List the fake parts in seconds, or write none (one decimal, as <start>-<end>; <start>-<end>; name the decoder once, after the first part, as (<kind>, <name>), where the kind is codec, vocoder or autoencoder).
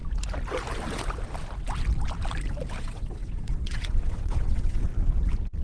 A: 2.8-4.9 (vocoder, WaveNeXt)